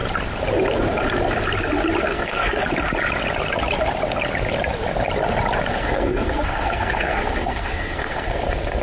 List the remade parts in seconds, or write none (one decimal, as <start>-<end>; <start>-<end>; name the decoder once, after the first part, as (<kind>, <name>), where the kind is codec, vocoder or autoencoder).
2.0-2.6 (codec, SNAC); 5.7-8.8